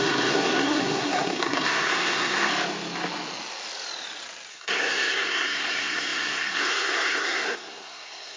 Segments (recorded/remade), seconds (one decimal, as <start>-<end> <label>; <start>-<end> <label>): 0.0-2.5 remade; 2.5-4.5 recorded; 4.5-8.4 remade